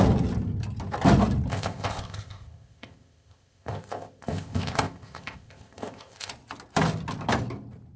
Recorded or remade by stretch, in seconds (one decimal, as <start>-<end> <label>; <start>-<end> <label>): 0.0-1.5 recorded; 1.5-6.3 remade; 6.3-8.0 recorded